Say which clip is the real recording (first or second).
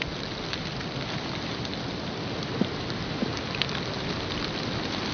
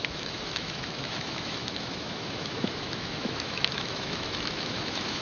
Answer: first